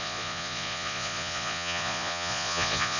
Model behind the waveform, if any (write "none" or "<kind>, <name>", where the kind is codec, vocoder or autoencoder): vocoder, Vocos